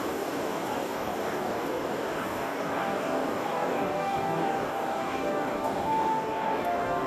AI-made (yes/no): yes